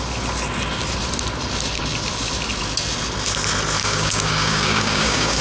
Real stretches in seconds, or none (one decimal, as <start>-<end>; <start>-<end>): 0.0-3.8